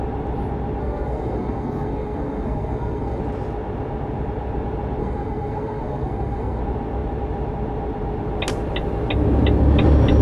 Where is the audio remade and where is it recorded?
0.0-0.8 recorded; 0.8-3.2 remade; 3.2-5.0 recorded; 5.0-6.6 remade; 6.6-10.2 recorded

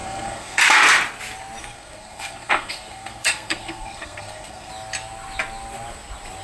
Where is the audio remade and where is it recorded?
0.0-0.6 remade; 0.6-1.6 recorded; 1.6-4.7 remade; 4.7-6.4 recorded

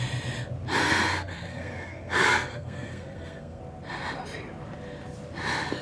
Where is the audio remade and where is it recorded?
0.0-0.8 recorded; 0.8-3.6 remade; 3.6-5.8 recorded

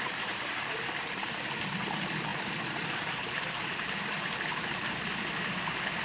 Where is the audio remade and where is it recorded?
0.0-6.0 recorded

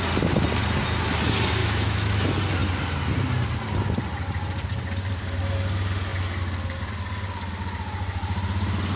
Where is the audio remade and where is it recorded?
0.0-1.6 recorded; 1.6-2.2 remade; 2.2-9.0 recorded

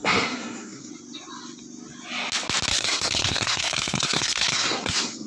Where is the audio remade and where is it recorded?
0.0-0.9 remade; 0.9-2.7 recorded; 2.7-5.3 remade